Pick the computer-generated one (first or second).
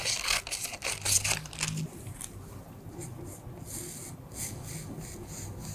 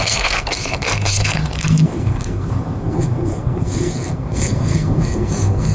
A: second